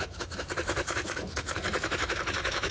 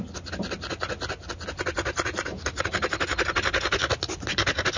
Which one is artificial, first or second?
first